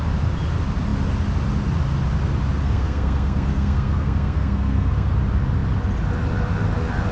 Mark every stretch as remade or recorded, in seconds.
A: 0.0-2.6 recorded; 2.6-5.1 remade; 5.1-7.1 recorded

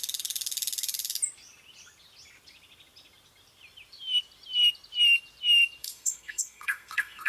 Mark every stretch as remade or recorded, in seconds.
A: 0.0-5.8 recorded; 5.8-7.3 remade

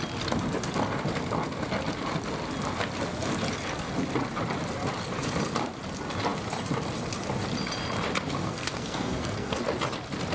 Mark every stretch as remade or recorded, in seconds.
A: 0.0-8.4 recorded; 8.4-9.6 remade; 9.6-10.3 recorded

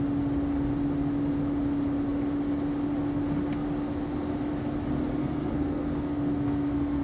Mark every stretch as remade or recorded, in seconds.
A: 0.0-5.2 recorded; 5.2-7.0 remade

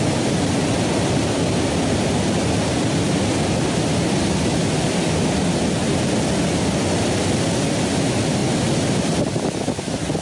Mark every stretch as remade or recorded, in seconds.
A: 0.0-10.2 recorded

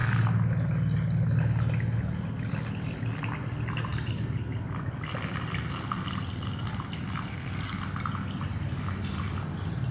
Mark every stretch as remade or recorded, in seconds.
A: 0.0-7.3 recorded; 7.3-7.8 remade; 7.8-9.9 recorded

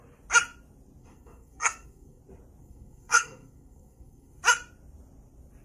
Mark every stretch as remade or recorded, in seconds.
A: 0.0-1.0 recorded; 1.0-2.2 remade; 2.2-2.6 recorded; 2.6-4.4 remade; 4.4-5.6 recorded